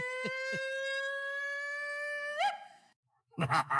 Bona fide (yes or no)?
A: no